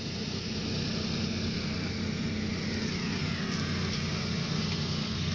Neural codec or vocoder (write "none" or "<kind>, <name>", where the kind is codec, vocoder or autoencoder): none